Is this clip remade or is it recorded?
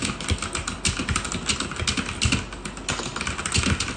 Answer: recorded